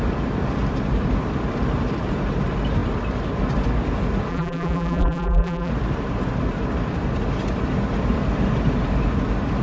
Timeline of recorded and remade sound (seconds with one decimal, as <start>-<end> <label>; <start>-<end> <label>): 0.0-4.3 recorded; 4.3-5.7 remade; 5.7-9.6 recorded

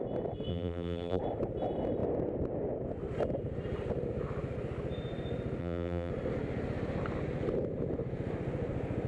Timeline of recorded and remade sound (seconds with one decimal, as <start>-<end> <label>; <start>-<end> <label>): 0.0-0.5 recorded; 0.5-1.2 remade; 1.2-5.6 recorded; 5.6-6.1 remade; 6.1-9.1 recorded